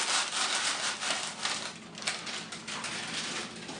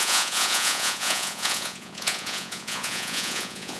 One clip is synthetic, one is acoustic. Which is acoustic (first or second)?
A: first